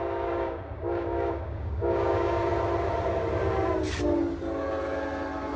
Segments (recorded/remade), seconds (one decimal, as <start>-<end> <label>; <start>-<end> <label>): 0.0-2.5 remade; 2.5-5.6 recorded